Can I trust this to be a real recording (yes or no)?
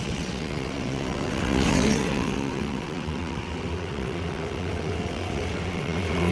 no